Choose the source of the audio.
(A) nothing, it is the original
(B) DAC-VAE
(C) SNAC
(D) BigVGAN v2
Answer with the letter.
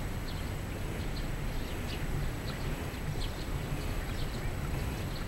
A